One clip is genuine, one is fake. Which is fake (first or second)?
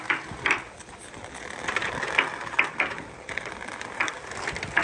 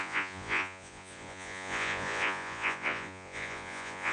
second